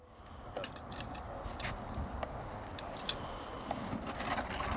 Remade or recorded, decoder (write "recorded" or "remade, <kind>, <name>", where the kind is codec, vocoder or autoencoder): recorded